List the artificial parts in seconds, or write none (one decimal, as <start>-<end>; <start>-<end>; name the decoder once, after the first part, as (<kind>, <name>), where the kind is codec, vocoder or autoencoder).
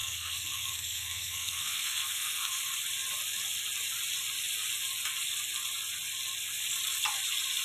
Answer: 0.0-2.6 (codec, SNAC)